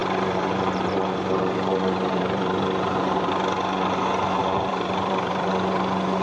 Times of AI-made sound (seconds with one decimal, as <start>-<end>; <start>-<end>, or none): 0.0-3.3; 4.4-5.5